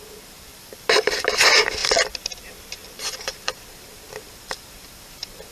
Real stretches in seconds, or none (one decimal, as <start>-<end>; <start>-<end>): 0.0-0.5; 1.2-1.8; 3.3-5.5